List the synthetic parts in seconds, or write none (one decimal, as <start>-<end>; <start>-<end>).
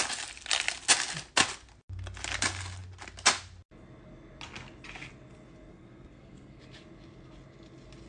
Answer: 5.7-6.6